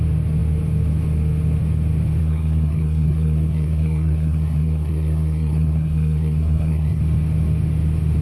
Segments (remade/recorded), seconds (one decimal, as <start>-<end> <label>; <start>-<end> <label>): 0.0-2.2 recorded; 2.2-7.0 remade; 7.0-8.2 recorded